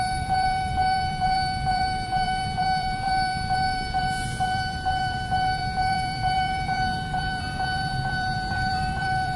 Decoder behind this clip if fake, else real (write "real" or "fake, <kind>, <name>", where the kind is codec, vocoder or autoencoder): fake, vocoder, BigVGAN v2